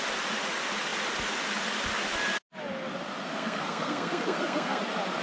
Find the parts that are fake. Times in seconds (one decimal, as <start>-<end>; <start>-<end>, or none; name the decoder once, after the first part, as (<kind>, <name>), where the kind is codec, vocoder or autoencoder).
3.3-4.8 (codec, SNAC)